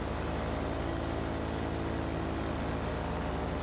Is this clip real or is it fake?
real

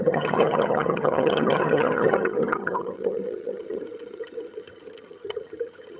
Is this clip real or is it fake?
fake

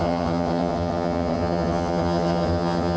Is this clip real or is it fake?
fake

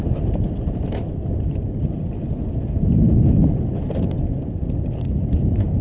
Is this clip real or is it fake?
real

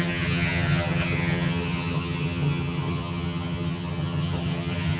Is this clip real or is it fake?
fake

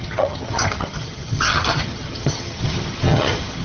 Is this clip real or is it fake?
fake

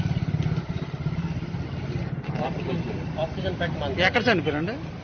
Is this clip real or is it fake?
real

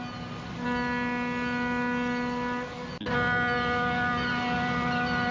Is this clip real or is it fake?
real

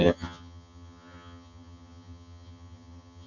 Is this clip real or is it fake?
fake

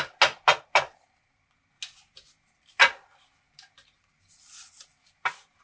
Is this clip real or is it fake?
real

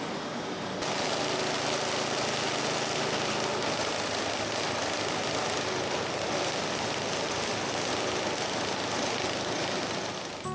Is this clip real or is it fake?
real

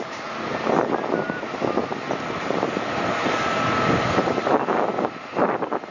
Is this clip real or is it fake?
real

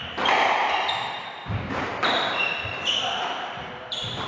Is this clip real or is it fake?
real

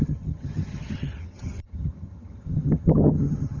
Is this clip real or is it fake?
fake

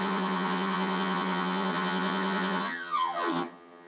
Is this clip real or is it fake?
fake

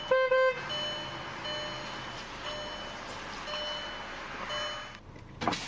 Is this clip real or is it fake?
real